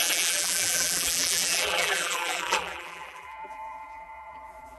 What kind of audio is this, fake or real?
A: fake